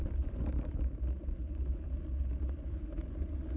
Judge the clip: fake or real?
real